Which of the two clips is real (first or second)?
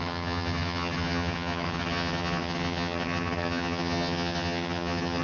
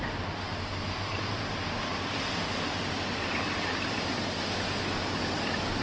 second